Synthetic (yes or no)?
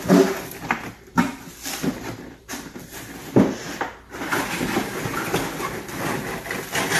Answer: no